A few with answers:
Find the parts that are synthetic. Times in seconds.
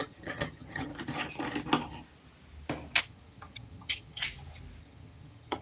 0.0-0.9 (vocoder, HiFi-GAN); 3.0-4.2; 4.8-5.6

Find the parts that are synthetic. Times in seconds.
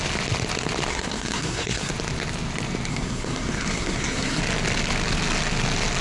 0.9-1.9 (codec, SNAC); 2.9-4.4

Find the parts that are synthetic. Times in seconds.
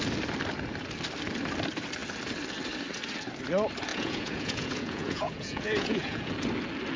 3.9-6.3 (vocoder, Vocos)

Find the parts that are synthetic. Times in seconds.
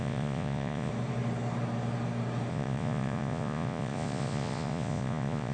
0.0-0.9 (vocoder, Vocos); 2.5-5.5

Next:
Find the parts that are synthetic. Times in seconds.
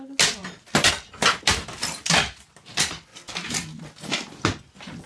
none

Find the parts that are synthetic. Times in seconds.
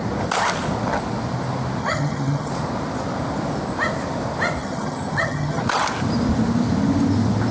1.8-2.5 (vocoder, HiFi-GAN); 4.6-5.6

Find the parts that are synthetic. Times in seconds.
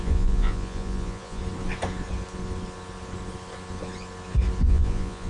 0.0-1.4 (vocoder, Vocos); 4.6-5.3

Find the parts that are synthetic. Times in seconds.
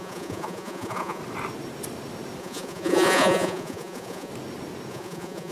0.0-1.2 (vocoder, Vocos); 2.4-4.3; 4.9-5.5